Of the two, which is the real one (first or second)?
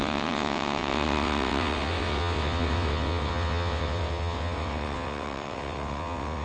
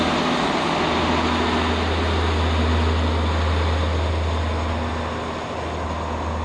second